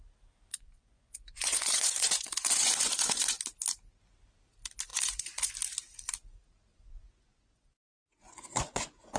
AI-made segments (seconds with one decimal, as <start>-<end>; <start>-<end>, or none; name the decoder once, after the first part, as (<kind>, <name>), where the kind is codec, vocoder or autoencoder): 0.5-3.4 (vocoder, Vocos); 4.9-5.5; 6.7-9.2